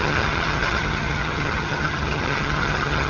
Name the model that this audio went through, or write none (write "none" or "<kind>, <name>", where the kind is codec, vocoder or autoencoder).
vocoder, HiFi-GAN